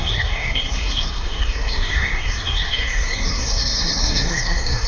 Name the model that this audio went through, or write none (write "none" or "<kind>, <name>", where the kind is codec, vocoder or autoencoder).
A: codec, SNAC